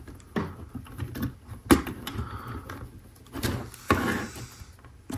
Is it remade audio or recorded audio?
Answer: recorded